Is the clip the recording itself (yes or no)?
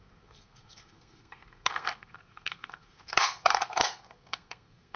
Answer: no